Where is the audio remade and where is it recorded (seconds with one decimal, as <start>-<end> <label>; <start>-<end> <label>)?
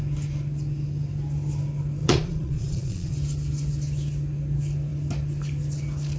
0.0-2.0 recorded; 2.0-3.1 remade; 3.1-6.2 recorded